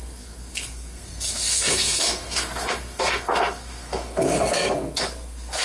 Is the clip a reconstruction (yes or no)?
yes